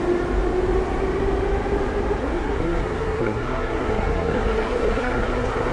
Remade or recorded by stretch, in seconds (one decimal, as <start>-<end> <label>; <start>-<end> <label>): 0.0-2.2 recorded; 2.2-5.7 remade